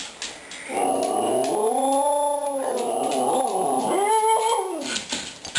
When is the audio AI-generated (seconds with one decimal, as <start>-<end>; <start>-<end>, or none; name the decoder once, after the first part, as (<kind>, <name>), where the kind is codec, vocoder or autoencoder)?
none